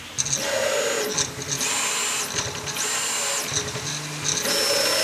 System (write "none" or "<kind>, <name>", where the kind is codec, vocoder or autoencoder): none